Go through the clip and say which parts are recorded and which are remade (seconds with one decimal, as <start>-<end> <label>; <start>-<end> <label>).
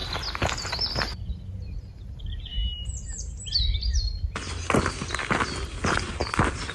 0.0-6.7 recorded